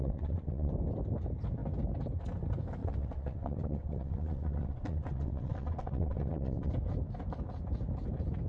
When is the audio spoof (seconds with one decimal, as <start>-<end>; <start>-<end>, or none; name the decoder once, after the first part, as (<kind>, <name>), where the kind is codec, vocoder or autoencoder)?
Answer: 0.0-0.7 (vocoder, WaveNeXt); 2.8-6.7